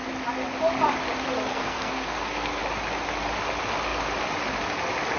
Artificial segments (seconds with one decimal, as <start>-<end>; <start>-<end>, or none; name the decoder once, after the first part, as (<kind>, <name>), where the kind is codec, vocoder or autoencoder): 1.5-2.6 (codec, SNAC)